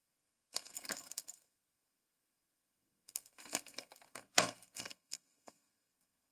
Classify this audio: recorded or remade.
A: remade